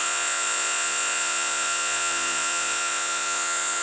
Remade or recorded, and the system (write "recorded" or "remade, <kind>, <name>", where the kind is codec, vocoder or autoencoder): remade, vocoder, Vocos